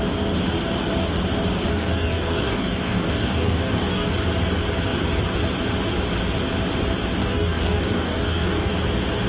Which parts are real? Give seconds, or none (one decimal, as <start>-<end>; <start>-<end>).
0.0-1.7; 4.1-7.2; 8.7-9.3